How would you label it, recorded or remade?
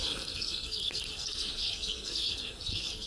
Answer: remade